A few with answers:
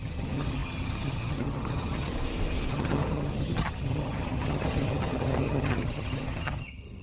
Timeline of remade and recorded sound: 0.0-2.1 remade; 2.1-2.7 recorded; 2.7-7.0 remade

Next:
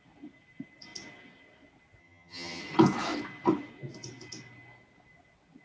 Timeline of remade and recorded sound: 0.0-2.0 recorded; 2.0-2.6 remade; 2.6-5.6 recorded

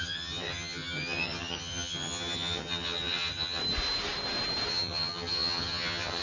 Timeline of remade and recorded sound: 0.0-3.6 remade; 3.6-4.7 recorded; 4.7-6.2 remade

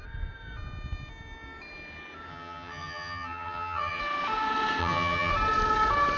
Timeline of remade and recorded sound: 0.0-2.3 recorded; 2.3-4.0 remade; 4.0-4.8 recorded; 4.8-5.3 remade; 5.3-6.2 recorded

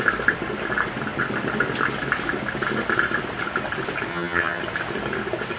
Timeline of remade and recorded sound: 0.0-4.1 recorded; 4.1-4.6 remade; 4.6-5.6 recorded

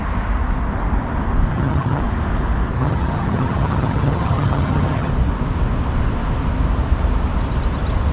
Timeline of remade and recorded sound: 0.0-1.5 recorded; 1.5-2.0 remade; 2.0-2.8 recorded; 2.8-5.1 remade; 5.1-8.1 recorded